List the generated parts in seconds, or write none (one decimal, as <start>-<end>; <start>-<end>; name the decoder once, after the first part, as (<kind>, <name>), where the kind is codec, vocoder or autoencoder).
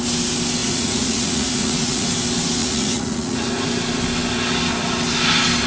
0.6-2.1 (vocoder, Vocos); 2.6-3.5